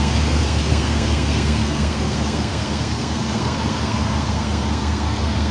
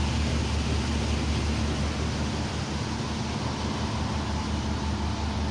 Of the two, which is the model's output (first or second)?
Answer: first